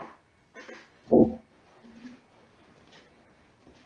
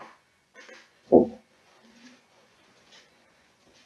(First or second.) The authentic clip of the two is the first